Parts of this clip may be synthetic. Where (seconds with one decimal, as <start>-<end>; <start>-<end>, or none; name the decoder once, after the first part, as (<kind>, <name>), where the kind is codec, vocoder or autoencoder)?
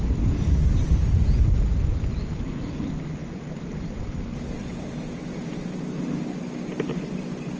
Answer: none